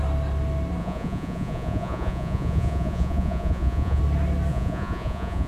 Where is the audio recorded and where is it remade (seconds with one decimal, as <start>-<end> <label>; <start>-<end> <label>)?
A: 0.0-0.8 recorded; 0.8-4.0 remade; 4.0-4.5 recorded; 4.5-5.5 remade